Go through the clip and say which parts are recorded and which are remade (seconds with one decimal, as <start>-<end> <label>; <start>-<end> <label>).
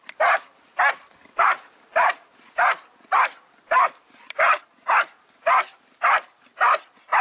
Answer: 0.0-1.3 recorded; 1.3-4.6 remade; 4.6-7.2 recorded